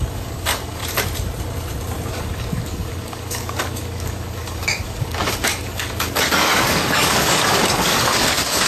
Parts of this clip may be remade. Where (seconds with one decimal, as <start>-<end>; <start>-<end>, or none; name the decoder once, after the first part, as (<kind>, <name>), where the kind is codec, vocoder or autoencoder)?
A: 0.0-0.8 (codec, DAC); 2.1-8.7